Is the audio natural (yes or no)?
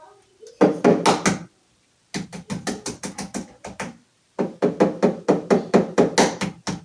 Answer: yes